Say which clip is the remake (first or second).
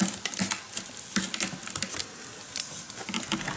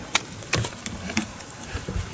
second